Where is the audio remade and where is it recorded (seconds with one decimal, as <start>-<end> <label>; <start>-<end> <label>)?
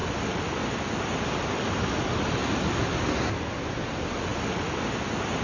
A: 0.0-5.4 recorded